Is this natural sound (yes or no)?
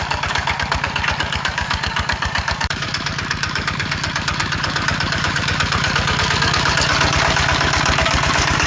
no